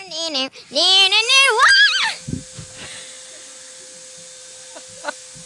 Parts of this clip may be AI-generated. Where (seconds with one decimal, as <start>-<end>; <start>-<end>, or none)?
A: none